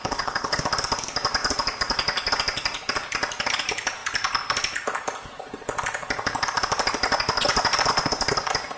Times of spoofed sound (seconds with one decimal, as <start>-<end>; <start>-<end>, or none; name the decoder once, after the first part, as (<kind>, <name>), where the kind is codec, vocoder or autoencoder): 0.0-0.6 (codec, HILCodec)